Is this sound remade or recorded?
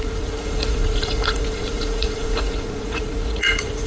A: remade